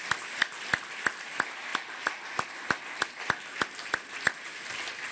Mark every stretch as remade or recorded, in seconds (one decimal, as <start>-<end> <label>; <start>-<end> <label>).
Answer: 0.0-5.1 recorded